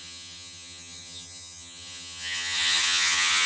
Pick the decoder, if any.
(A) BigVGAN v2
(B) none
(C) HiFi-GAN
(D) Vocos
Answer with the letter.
C